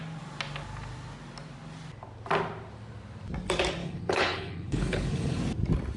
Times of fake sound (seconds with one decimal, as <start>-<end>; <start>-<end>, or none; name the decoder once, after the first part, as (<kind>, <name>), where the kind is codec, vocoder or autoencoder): 3.8-5.4 (codec, HILCodec)